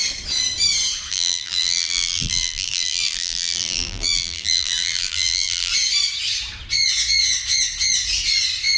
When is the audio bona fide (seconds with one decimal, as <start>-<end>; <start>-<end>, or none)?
0.0-1.1; 5.7-8.8